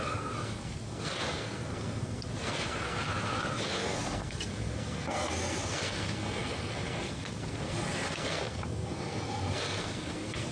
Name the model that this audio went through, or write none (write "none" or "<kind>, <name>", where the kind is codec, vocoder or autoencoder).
codec, SNAC